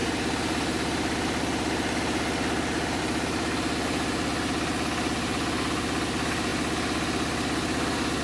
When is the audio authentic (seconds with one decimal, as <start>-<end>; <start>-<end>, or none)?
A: 0.0-8.2